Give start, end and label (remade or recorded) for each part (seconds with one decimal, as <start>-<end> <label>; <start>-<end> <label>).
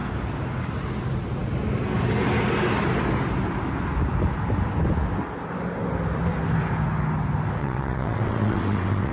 0.0-7.6 recorded; 7.6-9.1 remade